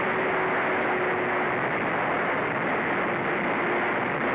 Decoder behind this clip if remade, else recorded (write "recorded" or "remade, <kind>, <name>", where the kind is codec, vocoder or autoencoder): recorded